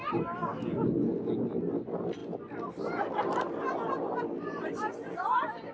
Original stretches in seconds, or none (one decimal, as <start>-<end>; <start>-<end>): 0.0-5.7